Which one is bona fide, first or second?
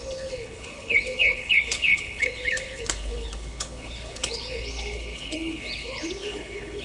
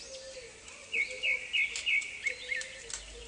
second